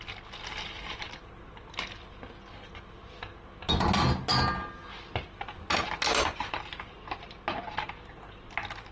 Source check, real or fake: real